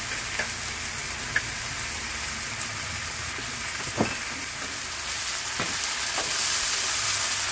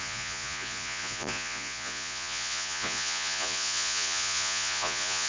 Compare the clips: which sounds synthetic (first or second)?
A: second